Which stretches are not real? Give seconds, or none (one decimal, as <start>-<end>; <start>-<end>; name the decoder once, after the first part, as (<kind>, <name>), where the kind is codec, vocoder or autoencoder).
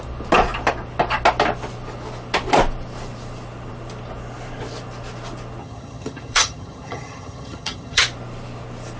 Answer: 5.6-8.0 (vocoder, HiFi-GAN)